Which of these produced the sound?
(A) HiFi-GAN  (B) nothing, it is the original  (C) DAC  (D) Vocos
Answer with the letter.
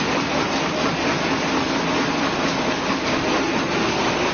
B